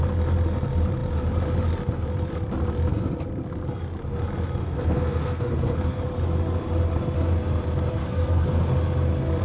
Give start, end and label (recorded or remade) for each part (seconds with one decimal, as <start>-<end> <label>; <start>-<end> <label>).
0.0-4.6 recorded; 4.6-6.0 remade; 6.0-8.0 recorded; 8.0-8.7 remade; 8.7-9.4 recorded